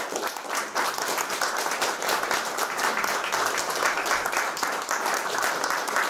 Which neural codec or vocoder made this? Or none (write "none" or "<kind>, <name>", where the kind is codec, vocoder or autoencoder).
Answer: none